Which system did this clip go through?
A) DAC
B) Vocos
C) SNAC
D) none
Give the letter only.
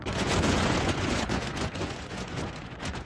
B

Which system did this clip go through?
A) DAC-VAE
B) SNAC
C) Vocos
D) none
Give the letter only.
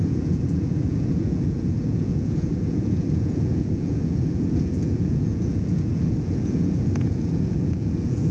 C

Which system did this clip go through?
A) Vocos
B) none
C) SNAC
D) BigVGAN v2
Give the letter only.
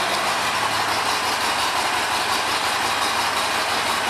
B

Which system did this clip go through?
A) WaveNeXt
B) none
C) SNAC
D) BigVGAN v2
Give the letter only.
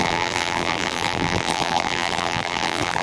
D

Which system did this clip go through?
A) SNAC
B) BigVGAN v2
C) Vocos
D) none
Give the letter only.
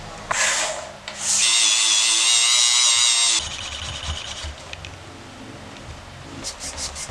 D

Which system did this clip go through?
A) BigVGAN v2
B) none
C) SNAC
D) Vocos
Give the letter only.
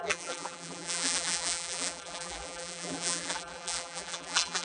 A